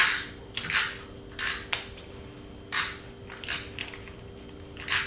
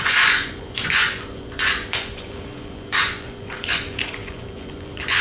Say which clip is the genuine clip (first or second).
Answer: first